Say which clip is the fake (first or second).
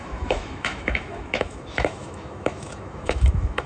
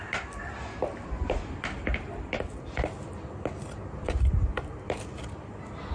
first